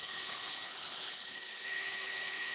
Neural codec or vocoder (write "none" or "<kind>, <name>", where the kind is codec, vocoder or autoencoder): codec, HILCodec